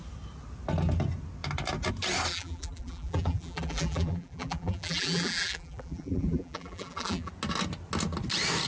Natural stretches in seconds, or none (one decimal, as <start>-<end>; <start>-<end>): 0.0-2.3; 7.3-8.7